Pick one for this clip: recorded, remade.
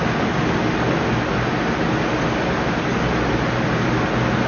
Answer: recorded